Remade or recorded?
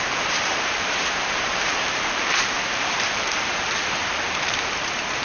remade